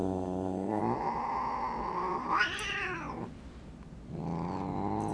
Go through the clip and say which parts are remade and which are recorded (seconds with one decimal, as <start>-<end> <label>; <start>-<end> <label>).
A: 0.0-0.8 remade; 0.8-5.1 recorded